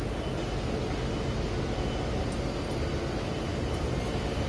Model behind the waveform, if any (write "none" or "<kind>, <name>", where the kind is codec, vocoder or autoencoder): none